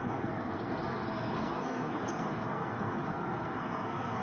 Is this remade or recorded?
remade